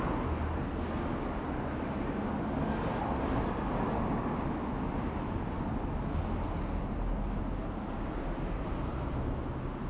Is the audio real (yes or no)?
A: yes